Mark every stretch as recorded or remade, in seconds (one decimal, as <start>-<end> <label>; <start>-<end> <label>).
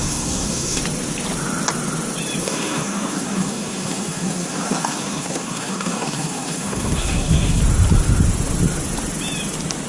0.0-0.8 remade; 0.8-2.4 recorded; 2.4-7.6 remade; 7.6-9.9 recorded